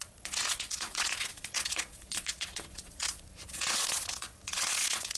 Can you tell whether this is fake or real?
fake